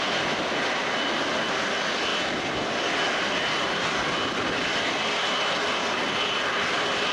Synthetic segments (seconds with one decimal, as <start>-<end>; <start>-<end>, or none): none